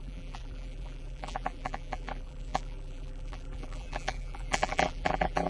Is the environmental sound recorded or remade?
remade